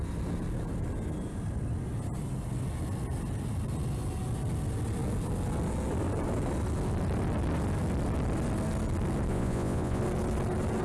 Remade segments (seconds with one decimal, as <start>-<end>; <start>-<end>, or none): 9.3-10.0